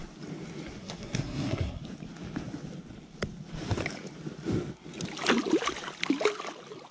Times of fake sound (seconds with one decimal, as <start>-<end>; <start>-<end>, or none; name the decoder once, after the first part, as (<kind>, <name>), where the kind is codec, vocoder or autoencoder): 0.8-1.8 (codec, SNAC)